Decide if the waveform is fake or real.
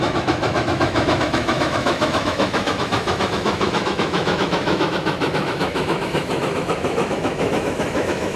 fake